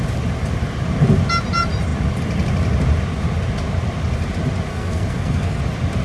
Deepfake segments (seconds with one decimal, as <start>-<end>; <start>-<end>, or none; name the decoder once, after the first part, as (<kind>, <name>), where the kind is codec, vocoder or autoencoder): 4.7-5.6 (codec, SNAC)